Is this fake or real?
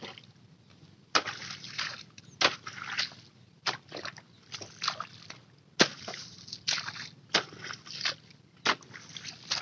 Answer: real